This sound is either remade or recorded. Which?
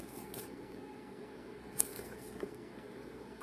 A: remade